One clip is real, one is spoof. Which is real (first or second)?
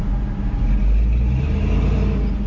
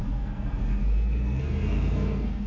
first